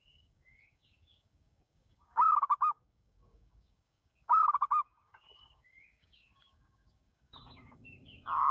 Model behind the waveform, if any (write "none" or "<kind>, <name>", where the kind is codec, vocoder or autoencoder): codec, DAC